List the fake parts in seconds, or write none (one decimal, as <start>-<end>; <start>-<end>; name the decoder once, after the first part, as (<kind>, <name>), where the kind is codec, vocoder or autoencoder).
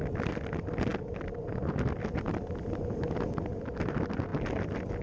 none